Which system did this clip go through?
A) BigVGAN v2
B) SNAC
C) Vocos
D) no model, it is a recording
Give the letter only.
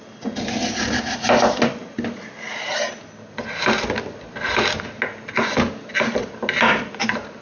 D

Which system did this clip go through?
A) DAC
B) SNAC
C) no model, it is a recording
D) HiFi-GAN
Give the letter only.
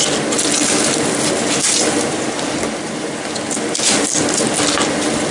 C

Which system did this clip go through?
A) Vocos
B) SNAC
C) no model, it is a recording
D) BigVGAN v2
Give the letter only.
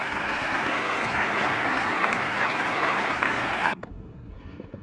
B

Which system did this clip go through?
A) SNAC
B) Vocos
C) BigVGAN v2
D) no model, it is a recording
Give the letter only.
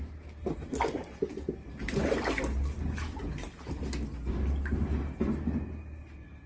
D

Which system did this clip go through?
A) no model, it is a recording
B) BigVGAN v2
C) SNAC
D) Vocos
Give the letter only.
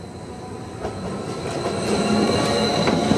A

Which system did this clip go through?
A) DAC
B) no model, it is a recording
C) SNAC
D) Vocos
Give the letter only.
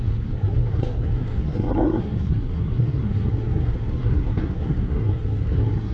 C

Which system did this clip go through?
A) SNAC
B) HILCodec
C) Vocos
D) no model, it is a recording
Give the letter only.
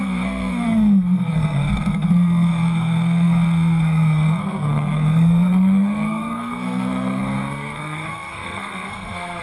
A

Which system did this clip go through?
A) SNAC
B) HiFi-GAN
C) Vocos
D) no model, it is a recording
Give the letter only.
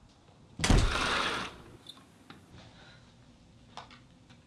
D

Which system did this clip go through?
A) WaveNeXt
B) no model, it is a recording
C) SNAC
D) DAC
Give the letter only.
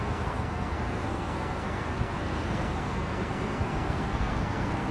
C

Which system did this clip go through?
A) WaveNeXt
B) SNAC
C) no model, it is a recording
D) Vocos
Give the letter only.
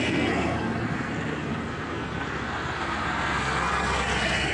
B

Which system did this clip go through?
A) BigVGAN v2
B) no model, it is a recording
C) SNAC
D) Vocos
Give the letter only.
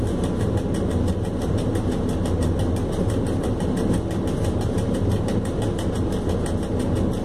B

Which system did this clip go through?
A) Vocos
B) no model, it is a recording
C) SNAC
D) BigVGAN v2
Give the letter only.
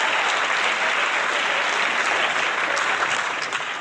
B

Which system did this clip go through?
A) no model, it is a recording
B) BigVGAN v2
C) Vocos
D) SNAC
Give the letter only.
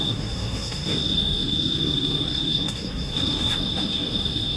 D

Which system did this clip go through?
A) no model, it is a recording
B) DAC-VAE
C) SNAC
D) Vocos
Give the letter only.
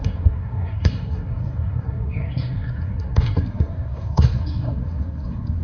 C